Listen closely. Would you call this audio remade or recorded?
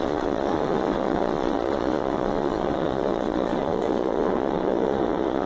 remade